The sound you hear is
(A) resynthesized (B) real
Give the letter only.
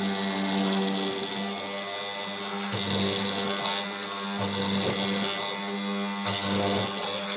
B